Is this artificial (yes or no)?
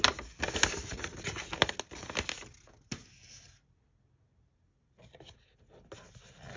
no